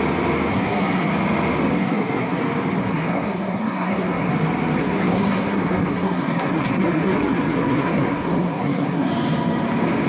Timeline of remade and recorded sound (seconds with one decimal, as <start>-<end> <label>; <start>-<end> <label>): 0.0-0.5 recorded; 0.5-1.1 remade; 1.1-1.7 recorded; 1.7-2.4 remade; 2.4-2.8 recorded; 2.8-4.3 remade; 4.3-4.8 recorded; 4.8-9.1 remade; 9.1-10.1 recorded